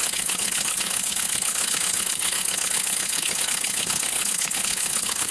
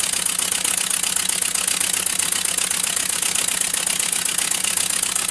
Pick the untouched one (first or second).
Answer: second